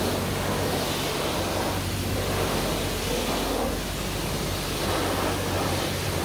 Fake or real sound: real